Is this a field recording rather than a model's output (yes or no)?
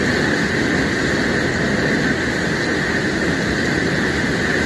yes